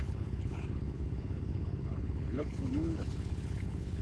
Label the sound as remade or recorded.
remade